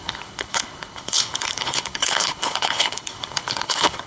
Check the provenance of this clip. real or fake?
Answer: fake